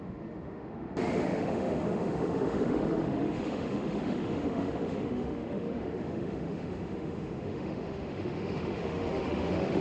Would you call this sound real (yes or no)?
no